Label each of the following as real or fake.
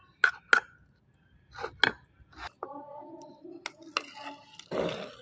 real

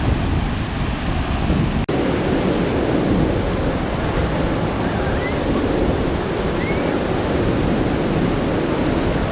real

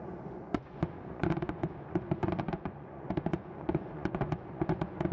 fake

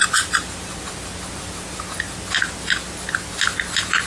real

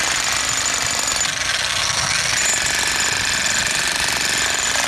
real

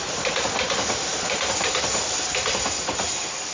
real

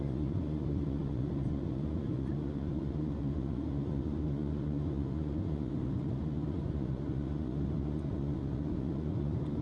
fake